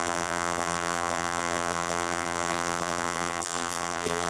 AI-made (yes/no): yes